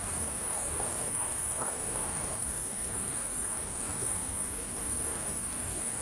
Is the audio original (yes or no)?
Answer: no